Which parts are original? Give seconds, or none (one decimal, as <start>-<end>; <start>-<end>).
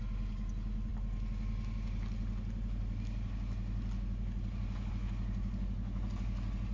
0.0-6.7